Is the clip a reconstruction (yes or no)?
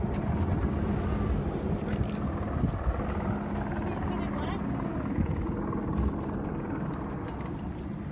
no